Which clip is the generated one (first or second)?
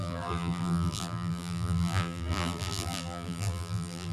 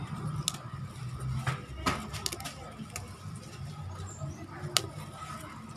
first